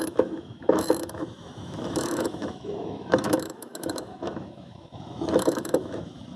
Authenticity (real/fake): fake